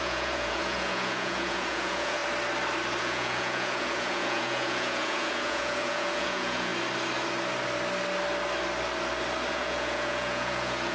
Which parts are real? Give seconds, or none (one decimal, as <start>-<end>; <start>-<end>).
2.2-3.0; 6.7-9.5